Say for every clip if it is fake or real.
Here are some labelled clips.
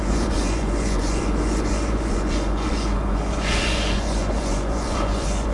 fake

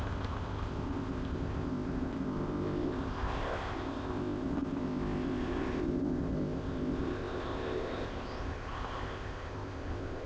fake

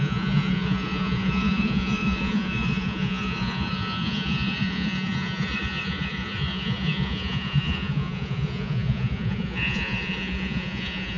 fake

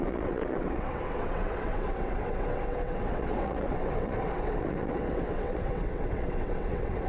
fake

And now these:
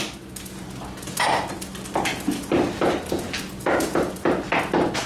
real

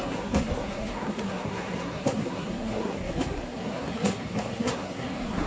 fake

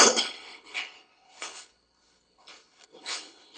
fake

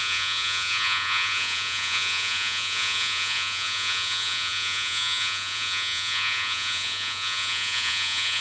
fake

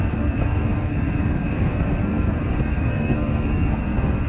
fake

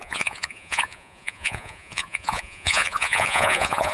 fake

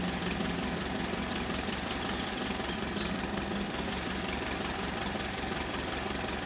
real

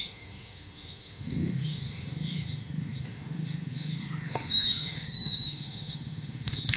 fake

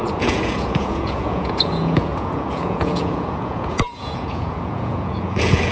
fake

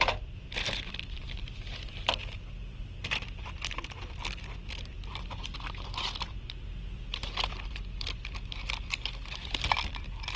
fake